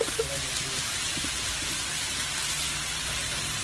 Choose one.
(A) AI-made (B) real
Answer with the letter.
B